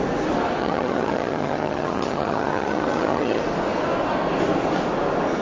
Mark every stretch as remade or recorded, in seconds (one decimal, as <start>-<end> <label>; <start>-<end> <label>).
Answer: 0.0-0.6 recorded; 0.6-3.4 remade; 3.4-5.4 recorded